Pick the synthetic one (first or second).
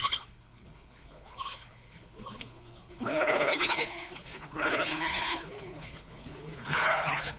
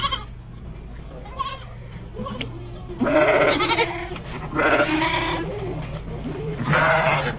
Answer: first